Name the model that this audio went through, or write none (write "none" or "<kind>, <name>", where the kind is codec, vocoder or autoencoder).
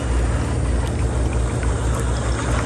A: none